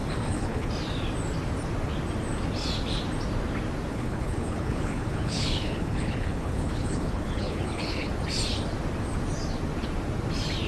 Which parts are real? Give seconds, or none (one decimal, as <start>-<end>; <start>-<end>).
0.7-3.9; 8.1-10.7